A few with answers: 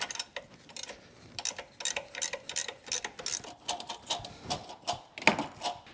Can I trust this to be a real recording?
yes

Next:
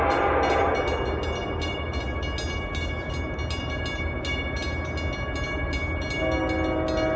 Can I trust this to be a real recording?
yes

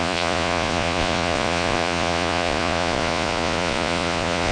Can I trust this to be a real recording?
no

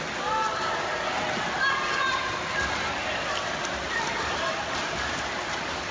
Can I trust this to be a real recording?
yes